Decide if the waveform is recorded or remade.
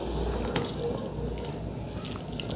recorded